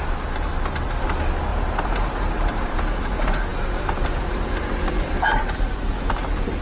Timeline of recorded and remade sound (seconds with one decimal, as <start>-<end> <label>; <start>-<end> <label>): 0.0-1.5 recorded; 1.5-2.9 remade; 2.9-5.3 recorded; 5.3-5.9 remade; 5.9-6.6 recorded